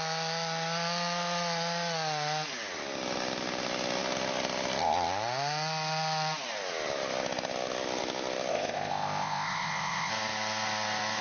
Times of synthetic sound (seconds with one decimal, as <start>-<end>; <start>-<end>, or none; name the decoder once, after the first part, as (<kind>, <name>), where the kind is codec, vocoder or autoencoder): 8.5-10.1 (codec, ZipCodec)